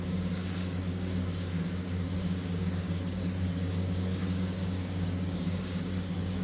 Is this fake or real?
fake